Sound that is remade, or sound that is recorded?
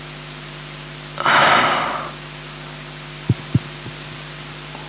recorded